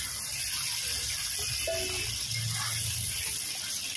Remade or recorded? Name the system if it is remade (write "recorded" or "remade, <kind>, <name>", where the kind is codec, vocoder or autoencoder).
recorded